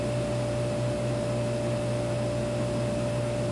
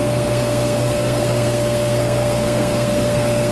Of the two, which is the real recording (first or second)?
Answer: first